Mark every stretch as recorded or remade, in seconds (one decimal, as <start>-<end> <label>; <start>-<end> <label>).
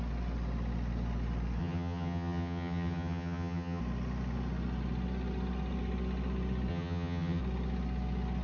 0.0-1.6 recorded; 1.6-3.8 remade; 3.8-6.7 recorded; 6.7-7.4 remade; 7.4-8.4 recorded